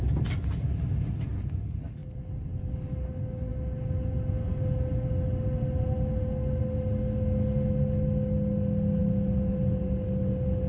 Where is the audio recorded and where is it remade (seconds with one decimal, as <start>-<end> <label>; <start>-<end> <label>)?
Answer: 0.0-10.7 recorded